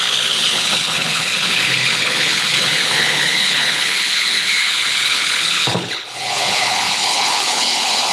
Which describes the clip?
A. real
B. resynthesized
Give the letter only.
B